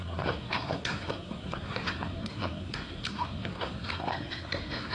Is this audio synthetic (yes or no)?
yes